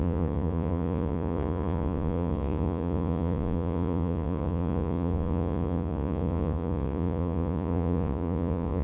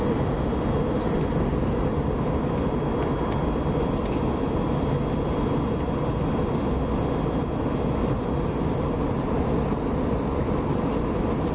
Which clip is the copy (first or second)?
first